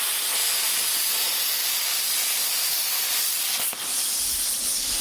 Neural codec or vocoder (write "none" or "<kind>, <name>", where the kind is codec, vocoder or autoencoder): none